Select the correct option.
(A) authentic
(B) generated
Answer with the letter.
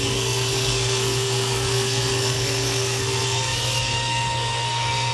B